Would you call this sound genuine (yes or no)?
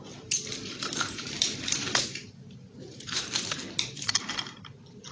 no